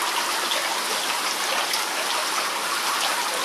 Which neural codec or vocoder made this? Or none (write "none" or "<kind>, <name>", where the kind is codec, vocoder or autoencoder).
none